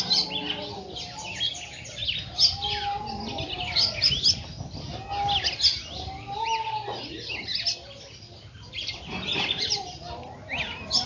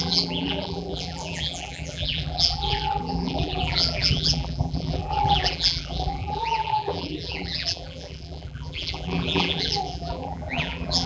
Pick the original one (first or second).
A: first